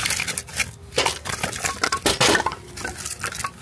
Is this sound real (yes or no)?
yes